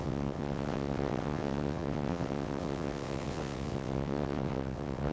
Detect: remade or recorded remade